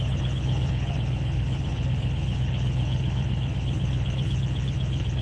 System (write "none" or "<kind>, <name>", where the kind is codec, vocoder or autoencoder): codec, HILCodec